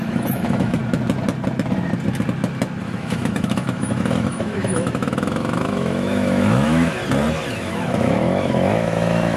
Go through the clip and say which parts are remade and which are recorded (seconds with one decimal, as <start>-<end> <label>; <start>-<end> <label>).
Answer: 0.0-0.8 remade; 0.8-2.8 recorded; 2.8-7.0 remade; 7.0-7.5 recorded; 7.5-9.4 remade